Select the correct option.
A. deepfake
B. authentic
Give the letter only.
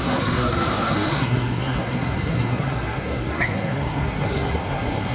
A